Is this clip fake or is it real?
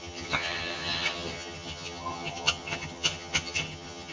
fake